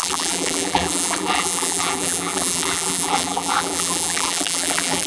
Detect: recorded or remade remade